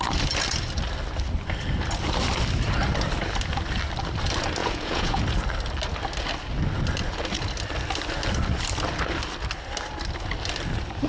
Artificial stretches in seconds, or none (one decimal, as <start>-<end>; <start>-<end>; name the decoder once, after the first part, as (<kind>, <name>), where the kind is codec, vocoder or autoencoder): 4.6-5.2 (vocoder, Vocos)